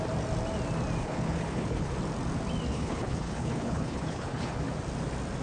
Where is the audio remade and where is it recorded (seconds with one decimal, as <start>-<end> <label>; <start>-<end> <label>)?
0.0-1.0 recorded; 1.0-1.9 remade; 1.9-2.7 recorded; 2.7-4.6 remade; 4.6-5.4 recorded